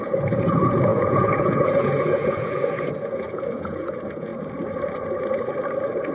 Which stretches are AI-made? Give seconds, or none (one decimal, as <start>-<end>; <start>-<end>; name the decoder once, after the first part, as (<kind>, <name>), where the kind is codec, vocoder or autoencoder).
0.0-4.3 (vocoder, Vocos)